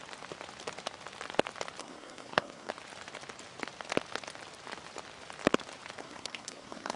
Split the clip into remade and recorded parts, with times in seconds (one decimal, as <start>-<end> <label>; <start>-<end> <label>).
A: 0.0-1.8 recorded; 1.8-2.7 remade; 2.7-6.0 recorded; 6.0-7.0 remade